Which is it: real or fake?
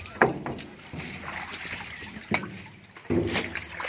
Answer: real